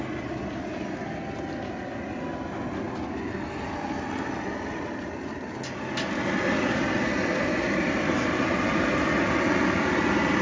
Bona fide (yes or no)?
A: yes